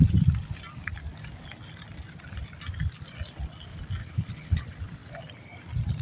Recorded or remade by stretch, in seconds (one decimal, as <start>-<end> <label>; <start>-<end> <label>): 0.0-4.0 recorded; 4.0-4.6 remade; 4.6-6.0 recorded